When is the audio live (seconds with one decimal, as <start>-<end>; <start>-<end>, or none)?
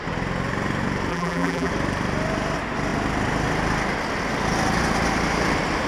0.0-1.1; 1.7-5.9